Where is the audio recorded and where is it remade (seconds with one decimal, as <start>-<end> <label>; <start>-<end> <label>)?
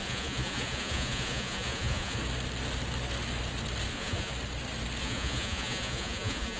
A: 0.0-2.2 remade; 2.2-3.9 recorded; 3.9-4.3 remade; 4.3-5.0 recorded; 5.0-6.6 remade